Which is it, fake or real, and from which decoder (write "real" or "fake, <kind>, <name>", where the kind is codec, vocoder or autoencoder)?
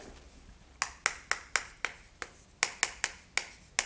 real